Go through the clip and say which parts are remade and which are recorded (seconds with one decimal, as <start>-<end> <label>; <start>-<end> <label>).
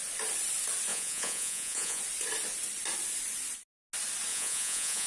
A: 0.0-0.9 recorded; 0.9-2.0 remade; 2.0-4.3 recorded; 4.3-5.1 remade